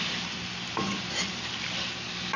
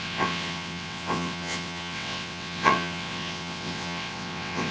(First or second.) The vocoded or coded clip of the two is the second